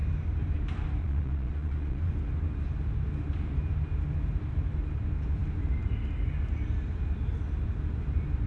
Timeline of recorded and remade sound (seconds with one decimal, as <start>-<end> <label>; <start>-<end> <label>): 0.0-1.0 recorded; 1.0-2.1 remade; 2.1-8.5 recorded